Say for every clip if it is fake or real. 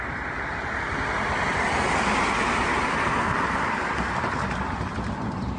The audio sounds real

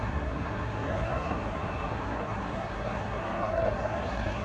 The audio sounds fake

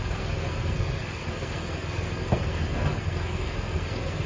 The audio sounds fake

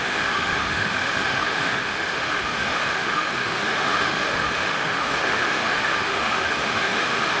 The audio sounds fake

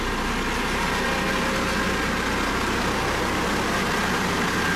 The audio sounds real